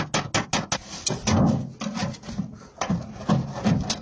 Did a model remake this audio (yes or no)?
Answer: no